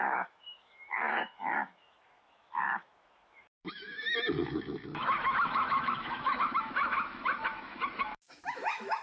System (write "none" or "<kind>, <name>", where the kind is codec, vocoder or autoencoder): autoencoder, DAC-VAE